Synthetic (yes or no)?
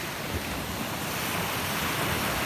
no